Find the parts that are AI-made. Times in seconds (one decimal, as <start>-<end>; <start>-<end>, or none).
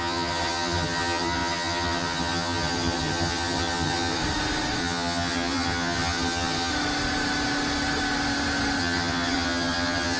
0.0-4.2; 4.8-6.7; 8.8-10.2